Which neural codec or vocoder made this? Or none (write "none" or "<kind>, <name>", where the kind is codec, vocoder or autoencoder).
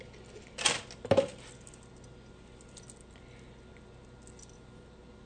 none